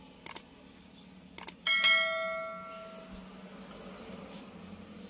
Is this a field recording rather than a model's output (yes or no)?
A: yes